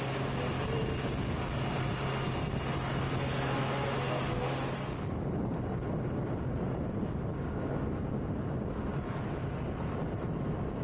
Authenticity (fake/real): real